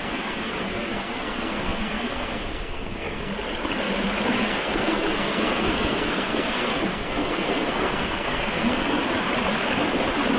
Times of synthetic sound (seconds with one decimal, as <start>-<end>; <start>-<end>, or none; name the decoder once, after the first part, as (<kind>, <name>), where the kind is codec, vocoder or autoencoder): 0.0-3.3 (codec, SNAC); 4.3-9.0